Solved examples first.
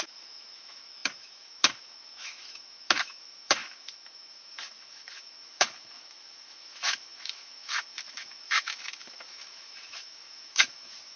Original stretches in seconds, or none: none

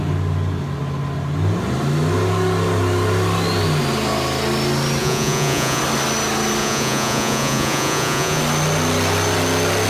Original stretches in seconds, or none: 0.0-5.0; 5.8-6.6; 8.4-9.9

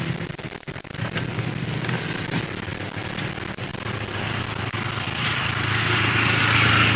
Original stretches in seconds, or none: 0.0-7.0

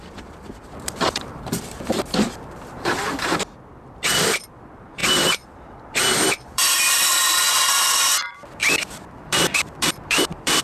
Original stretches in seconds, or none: none

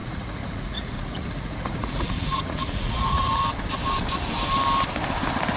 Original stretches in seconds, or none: 3.4-5.6

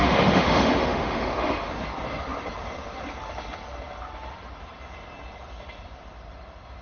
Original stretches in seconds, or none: 1.7-6.8